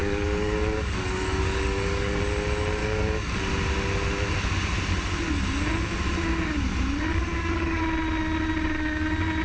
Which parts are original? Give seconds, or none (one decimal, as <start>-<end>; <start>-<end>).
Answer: 2.2-2.8; 3.4-7.1; 7.8-9.4